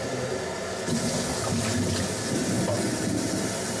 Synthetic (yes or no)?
no